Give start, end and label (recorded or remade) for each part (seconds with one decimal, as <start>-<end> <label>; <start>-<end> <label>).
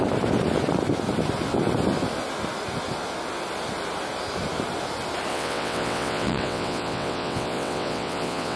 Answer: 0.0-5.3 recorded; 5.3-8.6 remade